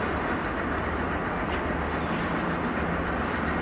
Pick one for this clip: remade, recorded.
recorded